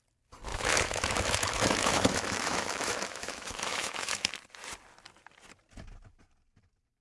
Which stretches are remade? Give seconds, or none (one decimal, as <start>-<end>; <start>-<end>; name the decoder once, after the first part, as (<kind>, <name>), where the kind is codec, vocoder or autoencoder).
0.5-4.3 (autoencoder, DAC-VAE)